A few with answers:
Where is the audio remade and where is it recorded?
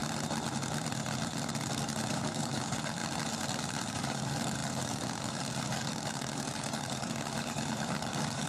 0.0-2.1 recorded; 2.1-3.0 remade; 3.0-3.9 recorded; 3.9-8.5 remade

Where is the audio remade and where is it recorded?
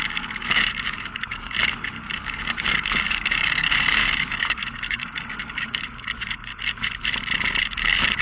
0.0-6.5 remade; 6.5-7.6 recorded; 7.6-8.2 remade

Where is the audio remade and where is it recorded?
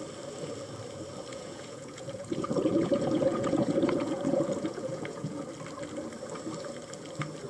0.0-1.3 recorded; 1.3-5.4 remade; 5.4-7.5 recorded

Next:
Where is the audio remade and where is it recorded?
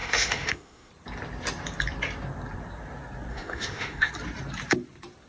0.0-0.9 remade; 0.9-3.3 recorded; 3.3-4.1 remade; 4.1-5.3 recorded